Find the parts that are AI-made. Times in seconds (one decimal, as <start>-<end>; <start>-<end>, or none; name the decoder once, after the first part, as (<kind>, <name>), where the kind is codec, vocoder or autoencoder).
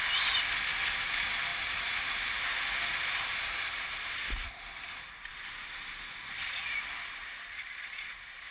none